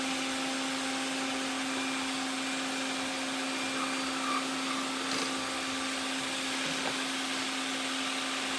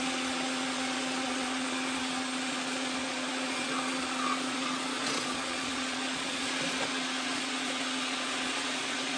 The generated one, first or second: second